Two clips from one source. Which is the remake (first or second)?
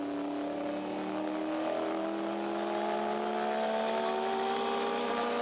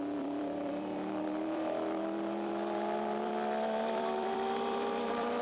second